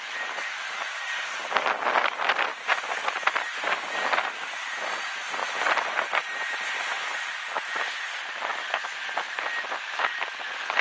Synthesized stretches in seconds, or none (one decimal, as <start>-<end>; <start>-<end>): 2.5-3.6; 5.4-6.5; 8.5-10.8